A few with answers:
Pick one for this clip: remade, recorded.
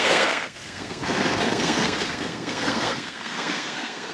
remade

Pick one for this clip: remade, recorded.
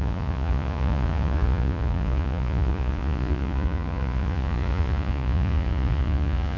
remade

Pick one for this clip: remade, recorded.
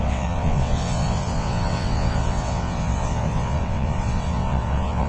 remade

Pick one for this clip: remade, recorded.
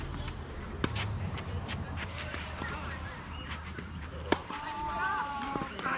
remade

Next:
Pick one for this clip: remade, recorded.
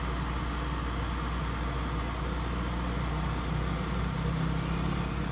recorded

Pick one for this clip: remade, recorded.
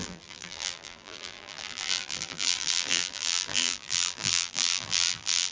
remade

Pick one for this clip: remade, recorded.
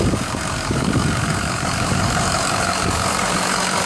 remade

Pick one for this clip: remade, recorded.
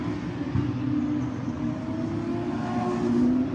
recorded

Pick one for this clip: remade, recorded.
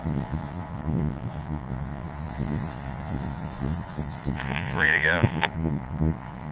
remade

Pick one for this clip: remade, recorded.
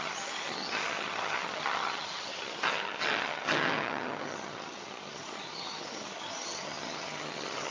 remade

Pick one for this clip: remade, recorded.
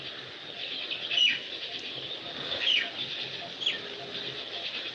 recorded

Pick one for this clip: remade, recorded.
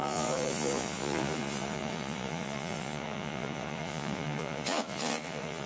remade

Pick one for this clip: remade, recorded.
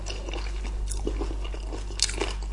recorded